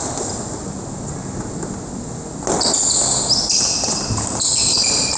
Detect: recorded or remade recorded